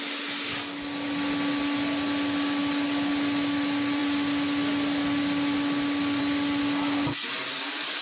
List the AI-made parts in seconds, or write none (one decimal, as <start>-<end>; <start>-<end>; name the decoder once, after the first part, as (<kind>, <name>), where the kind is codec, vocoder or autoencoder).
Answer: none